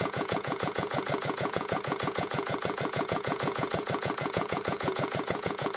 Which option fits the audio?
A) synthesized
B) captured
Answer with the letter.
A